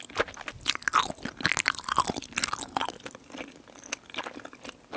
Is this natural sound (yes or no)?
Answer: yes